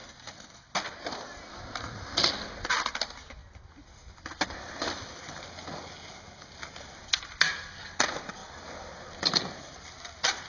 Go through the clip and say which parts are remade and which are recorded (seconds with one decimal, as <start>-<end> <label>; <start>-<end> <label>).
0.0-10.5 recorded